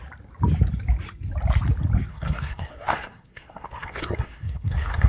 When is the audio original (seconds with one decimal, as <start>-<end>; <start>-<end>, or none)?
0.0-2.1